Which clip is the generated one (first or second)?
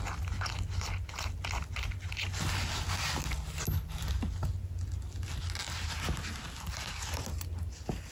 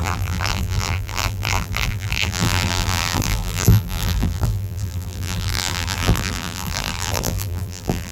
second